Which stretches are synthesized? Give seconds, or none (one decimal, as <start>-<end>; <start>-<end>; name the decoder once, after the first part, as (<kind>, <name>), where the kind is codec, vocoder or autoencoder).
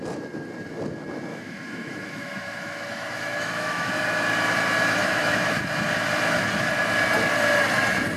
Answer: 1.3-3.9 (autoencoder, DAC-VAE); 5.0-5.6